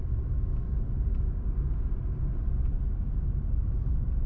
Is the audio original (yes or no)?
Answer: yes